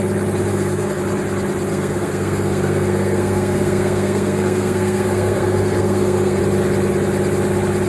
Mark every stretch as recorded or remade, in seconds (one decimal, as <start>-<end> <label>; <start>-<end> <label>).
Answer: 0.0-0.5 recorded; 0.5-1.0 remade; 1.0-1.7 recorded; 1.7-6.4 remade; 6.4-7.9 recorded